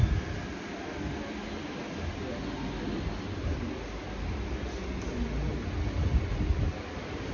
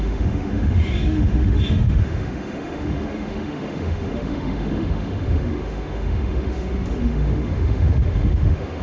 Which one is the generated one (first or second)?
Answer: second